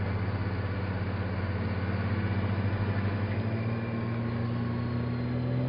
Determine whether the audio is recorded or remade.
recorded